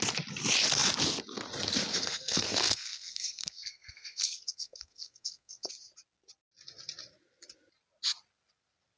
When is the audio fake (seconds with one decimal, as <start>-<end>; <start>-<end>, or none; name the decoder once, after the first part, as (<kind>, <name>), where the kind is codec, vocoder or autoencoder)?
1.9-5.7 (codec, SNAC)